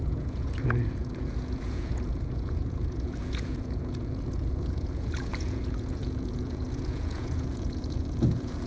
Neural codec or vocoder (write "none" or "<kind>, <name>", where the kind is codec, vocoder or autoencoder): vocoder, Vocos